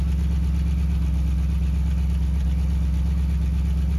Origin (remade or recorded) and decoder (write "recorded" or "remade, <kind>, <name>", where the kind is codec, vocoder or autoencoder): recorded